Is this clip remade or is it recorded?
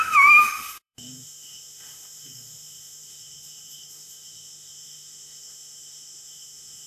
remade